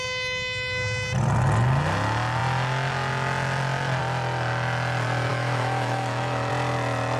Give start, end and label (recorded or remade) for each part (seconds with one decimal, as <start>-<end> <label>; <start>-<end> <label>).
0.0-5.3 recorded; 5.3-6.5 remade; 6.5-7.2 recorded